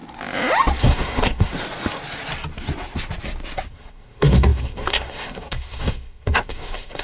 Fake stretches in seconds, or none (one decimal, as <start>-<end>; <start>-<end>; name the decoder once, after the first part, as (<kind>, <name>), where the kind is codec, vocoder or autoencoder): 0.8-1.5 (codec, SNAC); 3.7-7.0